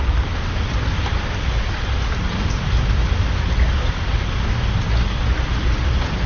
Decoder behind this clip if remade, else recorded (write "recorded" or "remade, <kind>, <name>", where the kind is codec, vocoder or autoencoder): recorded